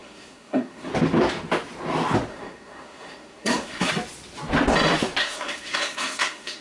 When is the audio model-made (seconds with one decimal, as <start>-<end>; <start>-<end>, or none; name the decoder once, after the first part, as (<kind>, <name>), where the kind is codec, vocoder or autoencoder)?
0.0-0.9 (codec, SNAC); 2.3-3.9; 5.2-6.6